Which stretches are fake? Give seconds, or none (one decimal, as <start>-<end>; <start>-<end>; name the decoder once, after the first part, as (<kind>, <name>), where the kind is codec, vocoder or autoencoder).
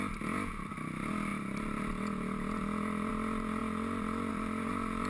none